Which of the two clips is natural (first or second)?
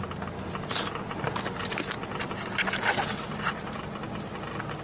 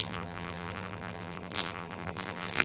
first